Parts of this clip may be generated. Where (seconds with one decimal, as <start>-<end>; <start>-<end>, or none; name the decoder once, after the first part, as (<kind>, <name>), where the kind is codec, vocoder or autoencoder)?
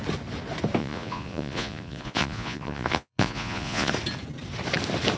0.8-3.9 (vocoder, Vocos)